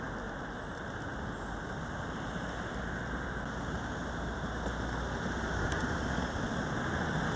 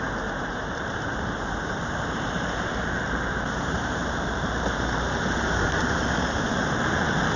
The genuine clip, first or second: first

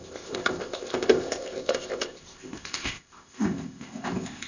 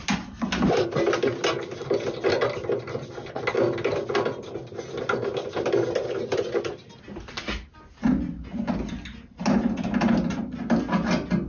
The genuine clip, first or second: second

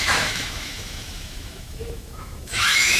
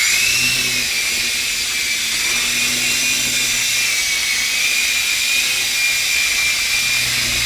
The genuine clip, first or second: second